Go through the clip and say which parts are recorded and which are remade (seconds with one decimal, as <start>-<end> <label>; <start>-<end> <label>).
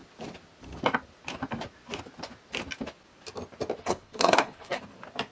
0.0-3.8 recorded; 3.8-4.8 remade; 4.8-5.3 recorded